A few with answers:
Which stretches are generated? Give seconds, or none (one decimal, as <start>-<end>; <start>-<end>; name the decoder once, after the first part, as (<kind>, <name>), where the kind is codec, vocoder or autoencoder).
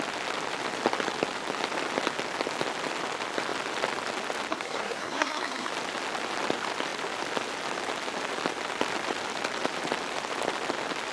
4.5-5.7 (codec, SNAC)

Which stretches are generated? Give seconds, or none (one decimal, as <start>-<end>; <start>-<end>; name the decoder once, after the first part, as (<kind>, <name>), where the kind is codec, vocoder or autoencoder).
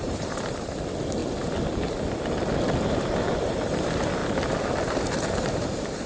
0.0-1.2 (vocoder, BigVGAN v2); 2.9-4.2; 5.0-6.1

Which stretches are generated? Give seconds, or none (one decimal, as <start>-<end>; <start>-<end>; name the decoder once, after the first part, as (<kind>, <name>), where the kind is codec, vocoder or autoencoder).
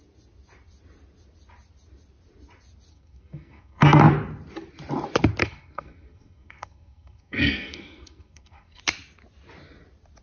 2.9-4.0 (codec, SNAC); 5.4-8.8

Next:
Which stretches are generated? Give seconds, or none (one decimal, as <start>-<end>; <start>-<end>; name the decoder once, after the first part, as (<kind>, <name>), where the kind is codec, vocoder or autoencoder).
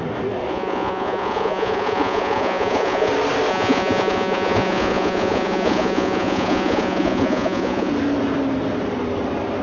0.5-3.1 (vocoder, Vocos); 3.5-7.9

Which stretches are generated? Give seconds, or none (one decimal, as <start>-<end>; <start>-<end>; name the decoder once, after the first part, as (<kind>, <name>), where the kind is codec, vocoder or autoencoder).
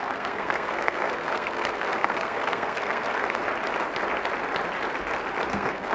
0.0-3.4 (codec, SNAC); 5.5-5.9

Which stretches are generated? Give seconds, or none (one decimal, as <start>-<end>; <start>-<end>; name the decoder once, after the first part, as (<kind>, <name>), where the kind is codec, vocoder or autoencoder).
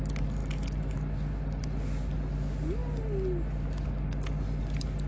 none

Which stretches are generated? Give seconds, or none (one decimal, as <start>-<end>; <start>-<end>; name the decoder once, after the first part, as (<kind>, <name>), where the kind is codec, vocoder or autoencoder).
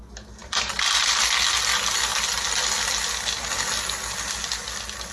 0.4-1.2 (vocoder, BigVGAN v2)